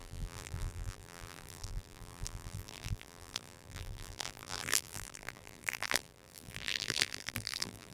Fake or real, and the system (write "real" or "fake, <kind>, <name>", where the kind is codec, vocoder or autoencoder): fake, vocoder, BigVGAN v2